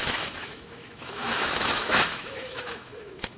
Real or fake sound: fake